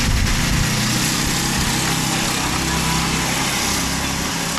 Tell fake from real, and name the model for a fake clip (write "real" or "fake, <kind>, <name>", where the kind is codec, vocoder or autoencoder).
real